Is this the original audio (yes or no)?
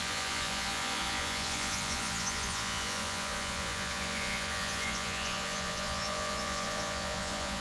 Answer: no